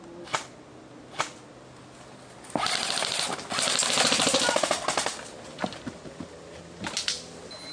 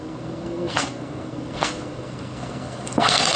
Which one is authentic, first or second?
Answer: first